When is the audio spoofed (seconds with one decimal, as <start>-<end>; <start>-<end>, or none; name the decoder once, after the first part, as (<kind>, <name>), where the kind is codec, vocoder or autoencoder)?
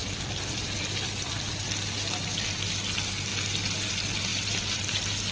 0.0-1.5 (vocoder, BigVGAN v2)